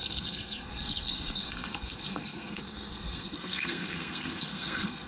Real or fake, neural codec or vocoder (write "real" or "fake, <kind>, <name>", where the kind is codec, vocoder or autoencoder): fake, codec, SNAC